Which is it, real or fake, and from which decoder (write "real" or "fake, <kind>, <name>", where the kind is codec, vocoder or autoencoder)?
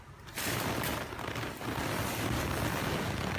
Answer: real